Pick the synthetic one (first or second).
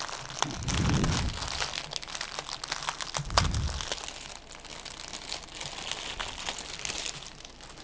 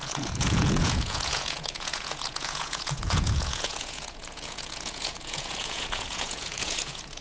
second